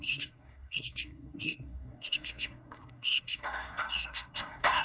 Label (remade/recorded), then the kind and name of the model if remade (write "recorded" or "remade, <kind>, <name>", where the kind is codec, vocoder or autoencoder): remade, codec, SNAC